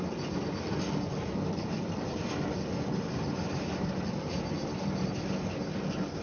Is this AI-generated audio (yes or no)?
no